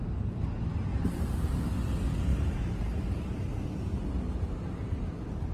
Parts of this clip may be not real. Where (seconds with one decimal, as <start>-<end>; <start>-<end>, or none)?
0.9-1.5; 2.3-3.4